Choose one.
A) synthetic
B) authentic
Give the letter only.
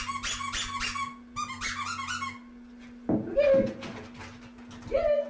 B